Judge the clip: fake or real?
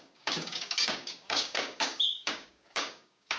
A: fake